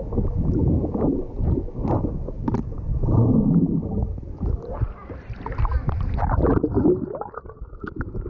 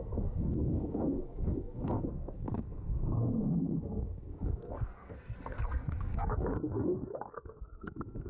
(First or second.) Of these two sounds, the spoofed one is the second